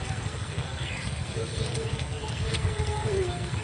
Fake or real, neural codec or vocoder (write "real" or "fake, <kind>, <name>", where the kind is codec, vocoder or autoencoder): fake, codec, SNAC